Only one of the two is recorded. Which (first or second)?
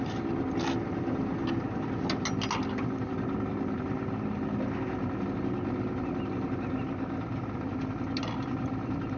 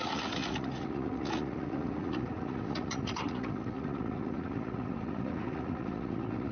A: first